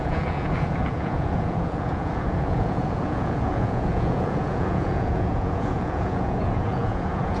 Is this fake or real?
fake